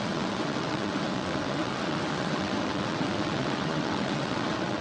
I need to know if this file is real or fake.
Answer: fake